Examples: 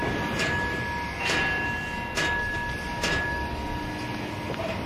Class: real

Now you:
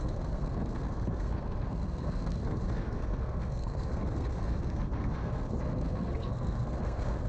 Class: fake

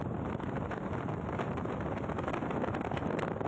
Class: real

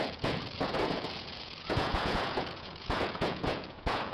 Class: fake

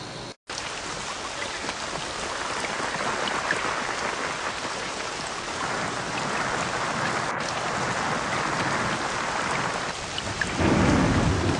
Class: real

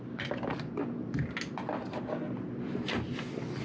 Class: real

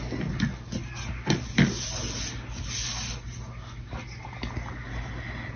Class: real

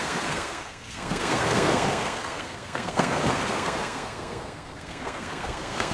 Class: fake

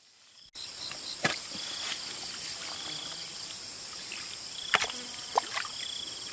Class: real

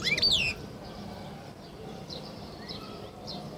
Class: fake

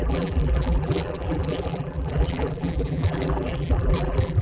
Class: fake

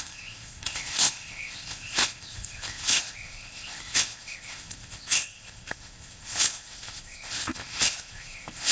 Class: fake